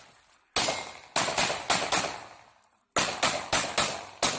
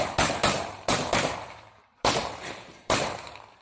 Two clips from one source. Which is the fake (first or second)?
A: second